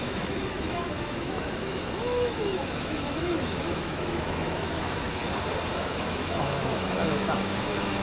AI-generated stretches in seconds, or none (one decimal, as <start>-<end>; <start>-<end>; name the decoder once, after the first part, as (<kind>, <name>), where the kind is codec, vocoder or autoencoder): 0.0-5.2 (autoencoder, DAC-VAE); 5.8-8.0

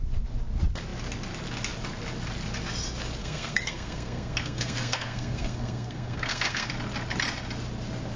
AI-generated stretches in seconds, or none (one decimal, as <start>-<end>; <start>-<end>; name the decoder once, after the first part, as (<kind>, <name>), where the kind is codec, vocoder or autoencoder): 3.2-6.7 (codec, SNAC)

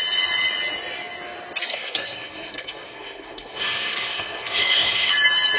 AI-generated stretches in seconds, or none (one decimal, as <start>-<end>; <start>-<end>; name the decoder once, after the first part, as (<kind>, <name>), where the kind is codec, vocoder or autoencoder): 1.7-5.1 (codec, SNAC)

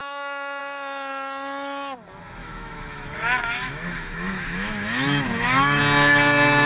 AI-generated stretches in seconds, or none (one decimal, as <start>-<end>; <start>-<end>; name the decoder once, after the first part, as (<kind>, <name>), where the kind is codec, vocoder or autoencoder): 0.0-0.6 (autoencoder, DAC-VAE); 2.4-5.8

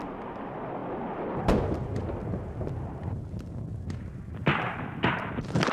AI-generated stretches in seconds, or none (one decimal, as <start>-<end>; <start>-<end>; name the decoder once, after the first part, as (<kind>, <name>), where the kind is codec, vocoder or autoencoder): none